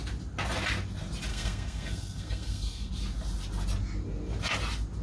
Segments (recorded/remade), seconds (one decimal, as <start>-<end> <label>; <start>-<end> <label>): 0.0-1.3 recorded; 1.3-2.9 remade; 2.9-5.0 recorded